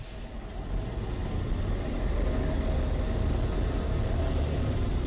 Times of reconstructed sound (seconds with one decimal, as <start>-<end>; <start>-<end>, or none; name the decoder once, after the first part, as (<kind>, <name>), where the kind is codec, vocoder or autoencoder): none